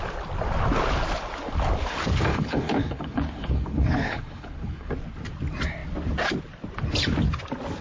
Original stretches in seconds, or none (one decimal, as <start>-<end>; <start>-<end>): 0.0-2.3; 4.9-7.8